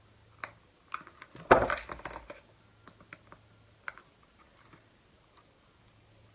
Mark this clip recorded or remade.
recorded